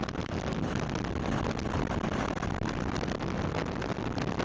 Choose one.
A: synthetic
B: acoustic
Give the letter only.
B